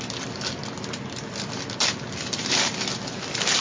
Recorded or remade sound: recorded